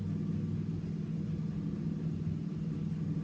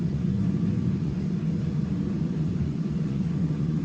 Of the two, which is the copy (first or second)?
second